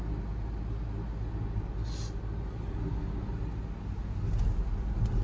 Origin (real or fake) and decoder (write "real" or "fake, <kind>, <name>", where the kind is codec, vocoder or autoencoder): real